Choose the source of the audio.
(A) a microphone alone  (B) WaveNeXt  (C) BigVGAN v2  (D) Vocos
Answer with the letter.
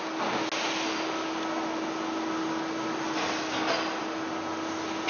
A